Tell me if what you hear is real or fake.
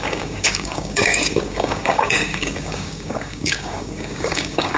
fake